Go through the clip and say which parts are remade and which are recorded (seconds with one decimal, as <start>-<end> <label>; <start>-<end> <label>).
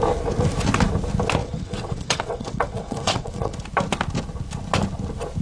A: 0.0-1.4 recorded; 1.4-3.5 remade; 3.5-5.4 recorded